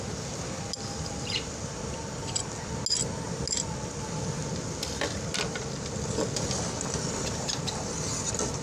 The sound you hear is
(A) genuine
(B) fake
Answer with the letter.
A